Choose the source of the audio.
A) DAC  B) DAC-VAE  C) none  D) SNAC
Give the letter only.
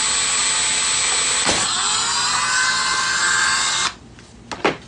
C